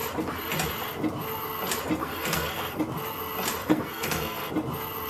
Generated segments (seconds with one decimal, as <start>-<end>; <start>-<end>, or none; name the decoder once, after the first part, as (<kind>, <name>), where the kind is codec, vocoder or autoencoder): 2.0-2.8 (codec, SNAC); 3.6-4.5